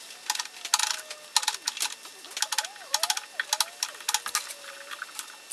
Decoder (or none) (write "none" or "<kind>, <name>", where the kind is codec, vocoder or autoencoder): none